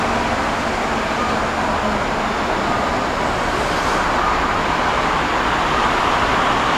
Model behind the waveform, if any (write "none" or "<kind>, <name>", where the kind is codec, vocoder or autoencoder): none